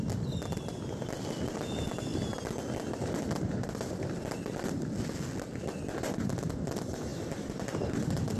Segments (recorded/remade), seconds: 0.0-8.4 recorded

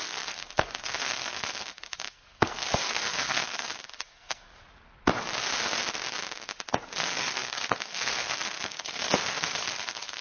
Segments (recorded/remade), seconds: 0.0-4.5 remade; 4.5-7.0 recorded; 7.0-10.2 remade

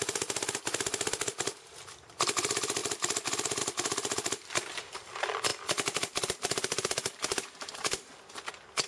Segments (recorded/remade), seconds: 0.0-8.9 remade

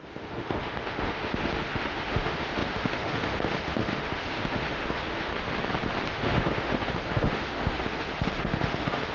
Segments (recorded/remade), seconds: 0.0-5.3 remade; 5.3-6.1 recorded; 6.1-9.1 remade